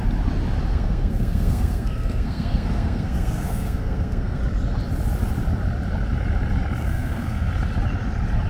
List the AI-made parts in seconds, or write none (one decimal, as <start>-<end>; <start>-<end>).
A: 0.7-4.4; 6.8-7.5